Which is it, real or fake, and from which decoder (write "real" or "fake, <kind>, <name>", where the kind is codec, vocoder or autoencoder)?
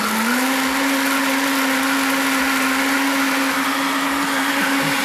real